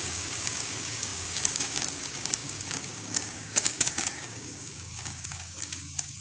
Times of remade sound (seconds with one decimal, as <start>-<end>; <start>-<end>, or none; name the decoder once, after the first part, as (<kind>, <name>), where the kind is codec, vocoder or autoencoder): 0.0-6.2 (codec, DAC)